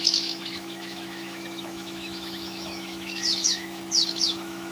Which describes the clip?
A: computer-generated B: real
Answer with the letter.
A